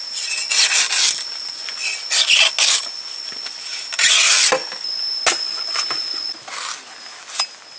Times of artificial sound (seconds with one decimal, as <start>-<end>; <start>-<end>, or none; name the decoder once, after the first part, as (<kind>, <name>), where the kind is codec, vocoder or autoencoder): none